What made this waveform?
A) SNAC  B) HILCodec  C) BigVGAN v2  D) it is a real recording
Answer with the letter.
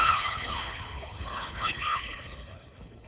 B